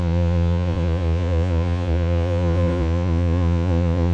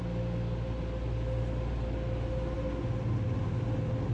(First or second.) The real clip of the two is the second